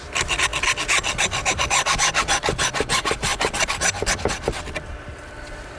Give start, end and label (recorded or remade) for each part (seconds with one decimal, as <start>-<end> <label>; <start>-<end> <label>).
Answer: 0.0-5.8 recorded